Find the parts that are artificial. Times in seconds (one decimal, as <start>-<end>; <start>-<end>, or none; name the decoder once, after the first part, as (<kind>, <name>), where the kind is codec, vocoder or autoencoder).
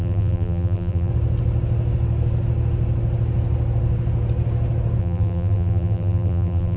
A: 0.0-1.1 (vocoder, BigVGAN v2); 5.0-6.8